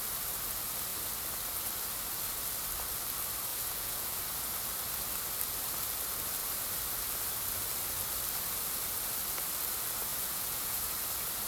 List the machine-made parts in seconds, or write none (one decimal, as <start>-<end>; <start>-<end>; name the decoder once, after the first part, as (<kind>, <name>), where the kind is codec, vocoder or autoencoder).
3.5-4.2 (vocoder, Vocos); 10.1-10.9

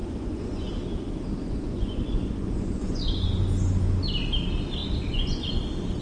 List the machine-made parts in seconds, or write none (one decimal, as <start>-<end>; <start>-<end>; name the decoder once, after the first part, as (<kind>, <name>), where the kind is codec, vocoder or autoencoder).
0.0-0.7 (vocoder, Vocos); 1.4-3.4; 4.8-5.5

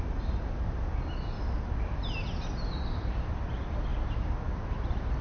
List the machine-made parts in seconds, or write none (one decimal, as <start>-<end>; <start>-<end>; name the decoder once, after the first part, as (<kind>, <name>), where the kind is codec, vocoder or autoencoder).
none

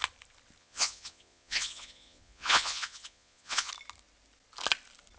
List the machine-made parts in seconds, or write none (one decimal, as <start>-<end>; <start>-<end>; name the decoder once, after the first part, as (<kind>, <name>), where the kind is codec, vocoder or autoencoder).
0.6-3.7 (vocoder, Vocos)